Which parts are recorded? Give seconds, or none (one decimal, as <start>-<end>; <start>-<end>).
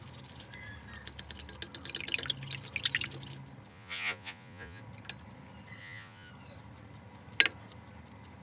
0.0-3.7; 4.8-5.8; 6.3-8.4